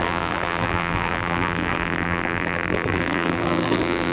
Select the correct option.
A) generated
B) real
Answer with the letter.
A